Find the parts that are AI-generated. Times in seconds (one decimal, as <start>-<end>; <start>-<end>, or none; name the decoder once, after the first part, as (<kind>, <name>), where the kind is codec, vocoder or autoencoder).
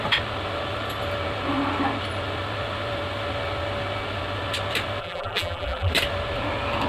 5.0-5.9 (vocoder, BigVGAN v2)